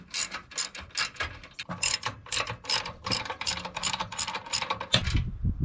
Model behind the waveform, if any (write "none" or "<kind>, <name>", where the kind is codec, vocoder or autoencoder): none